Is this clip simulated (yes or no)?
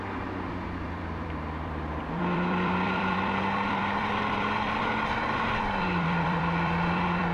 yes